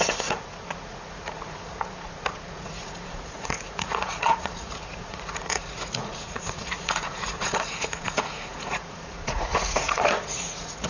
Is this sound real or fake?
fake